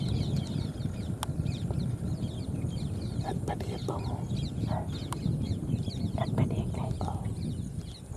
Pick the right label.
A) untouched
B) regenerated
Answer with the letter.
A